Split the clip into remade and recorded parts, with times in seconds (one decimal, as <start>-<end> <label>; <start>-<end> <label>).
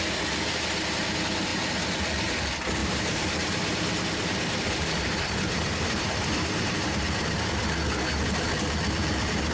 0.0-2.8 recorded; 2.8-7.6 remade; 7.6-9.5 recorded